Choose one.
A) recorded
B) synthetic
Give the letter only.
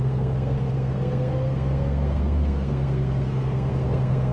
B